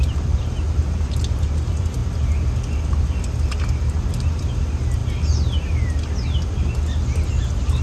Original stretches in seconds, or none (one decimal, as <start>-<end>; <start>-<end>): 2.0-4.1; 5.0-7.8

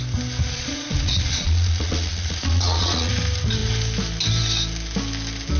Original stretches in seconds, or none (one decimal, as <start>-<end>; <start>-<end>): 0.0-0.4; 3.1-5.6